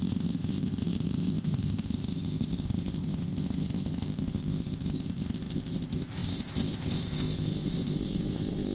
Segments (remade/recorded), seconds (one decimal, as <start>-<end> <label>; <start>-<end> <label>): 0.0-8.7 remade